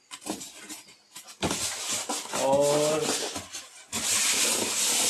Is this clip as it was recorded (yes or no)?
yes